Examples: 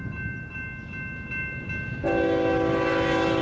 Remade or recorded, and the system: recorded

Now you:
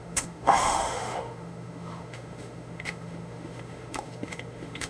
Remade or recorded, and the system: remade, autoencoder, DAC-VAE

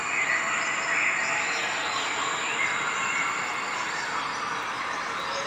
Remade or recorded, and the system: recorded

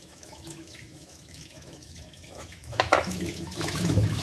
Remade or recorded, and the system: remade, autoencoder, DAC-VAE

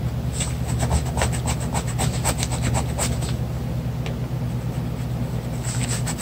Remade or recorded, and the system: recorded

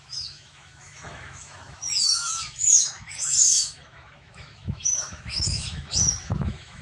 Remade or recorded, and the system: remade, autoencoder, DAC-VAE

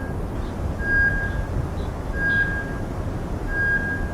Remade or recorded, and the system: recorded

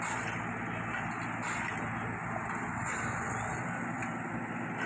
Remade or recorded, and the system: recorded